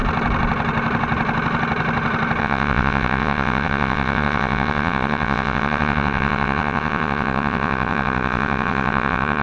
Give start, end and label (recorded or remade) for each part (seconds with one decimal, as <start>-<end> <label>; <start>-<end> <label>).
0.0-2.4 recorded; 2.4-9.4 remade